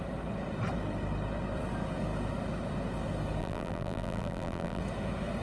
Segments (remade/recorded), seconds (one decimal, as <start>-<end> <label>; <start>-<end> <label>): 0.0-3.4 recorded; 3.4-4.8 remade; 4.8-5.4 recorded